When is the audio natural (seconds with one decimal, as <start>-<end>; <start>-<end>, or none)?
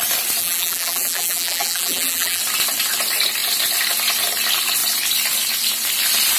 0.0-0.4; 2.4-6.4